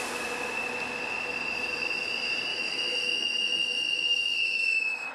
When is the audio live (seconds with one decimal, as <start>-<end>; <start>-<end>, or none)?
0.0-2.5